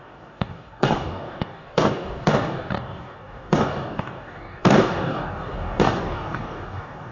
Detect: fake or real fake